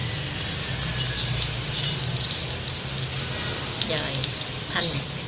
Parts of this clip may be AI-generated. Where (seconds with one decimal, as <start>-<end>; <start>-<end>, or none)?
none